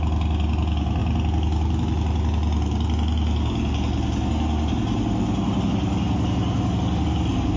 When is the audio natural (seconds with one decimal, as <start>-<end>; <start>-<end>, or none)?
0.0-7.6